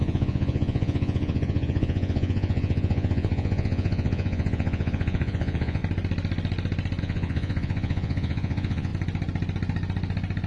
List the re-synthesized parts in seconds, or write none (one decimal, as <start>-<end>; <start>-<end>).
0.0-5.8; 7.0-8.9